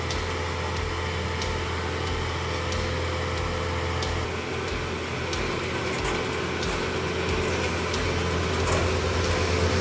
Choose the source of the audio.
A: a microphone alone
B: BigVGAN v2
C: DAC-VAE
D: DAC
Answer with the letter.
A